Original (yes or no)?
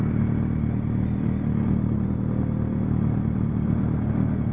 yes